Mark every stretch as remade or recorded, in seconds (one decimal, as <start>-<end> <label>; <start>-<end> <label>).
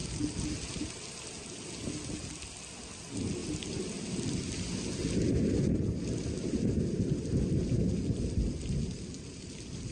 0.0-9.9 recorded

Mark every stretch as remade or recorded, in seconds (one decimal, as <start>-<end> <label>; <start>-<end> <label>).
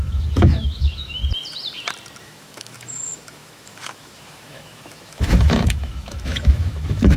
0.0-1.2 remade; 1.2-2.2 recorded; 2.2-7.2 remade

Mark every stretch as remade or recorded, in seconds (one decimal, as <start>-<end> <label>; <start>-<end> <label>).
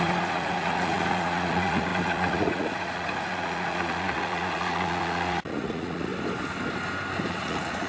0.0-6.1 remade; 6.1-7.3 recorded; 7.3-7.9 remade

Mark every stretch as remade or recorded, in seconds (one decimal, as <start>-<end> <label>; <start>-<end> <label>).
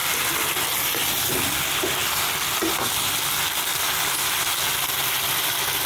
0.0-5.9 recorded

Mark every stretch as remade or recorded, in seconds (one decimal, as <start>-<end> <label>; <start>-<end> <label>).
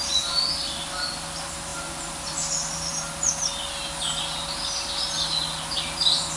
0.0-6.4 recorded